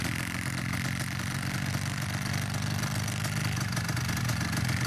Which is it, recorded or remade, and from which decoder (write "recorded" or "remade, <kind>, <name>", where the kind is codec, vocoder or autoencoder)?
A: recorded